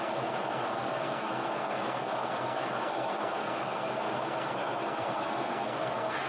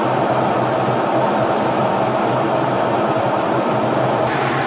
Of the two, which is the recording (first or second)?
second